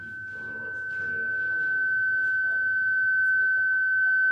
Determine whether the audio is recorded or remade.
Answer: recorded